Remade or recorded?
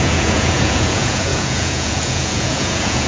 remade